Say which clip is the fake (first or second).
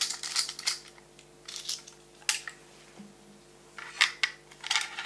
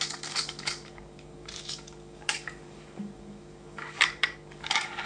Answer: second